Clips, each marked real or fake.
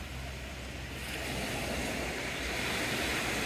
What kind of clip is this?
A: real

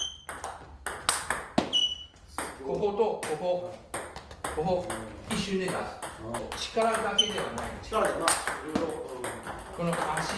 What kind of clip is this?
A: real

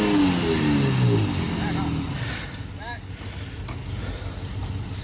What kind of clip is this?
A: real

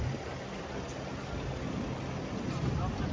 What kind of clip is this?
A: real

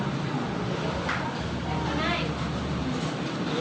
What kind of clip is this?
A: real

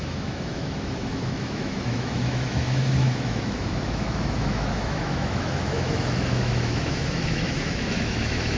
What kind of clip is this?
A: fake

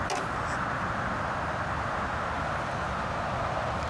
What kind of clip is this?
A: real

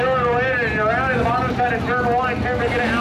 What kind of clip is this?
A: real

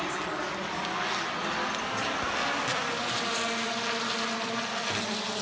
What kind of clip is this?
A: real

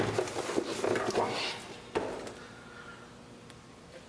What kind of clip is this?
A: real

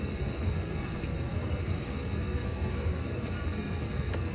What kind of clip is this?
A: fake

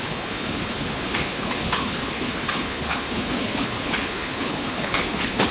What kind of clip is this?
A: fake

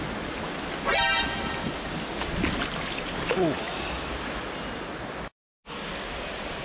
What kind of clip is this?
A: real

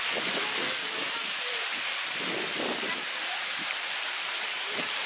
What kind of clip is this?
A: real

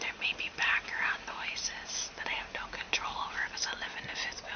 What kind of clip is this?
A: real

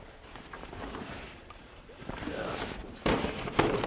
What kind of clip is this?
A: fake